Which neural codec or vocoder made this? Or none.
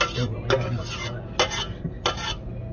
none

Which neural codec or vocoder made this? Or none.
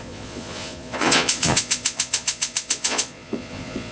vocoder, Vocos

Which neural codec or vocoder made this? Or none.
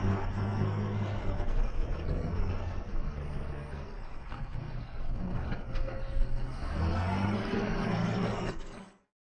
codec, SNAC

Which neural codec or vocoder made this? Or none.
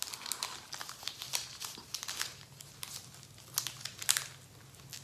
none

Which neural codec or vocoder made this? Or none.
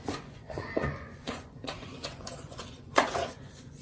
vocoder, Vocos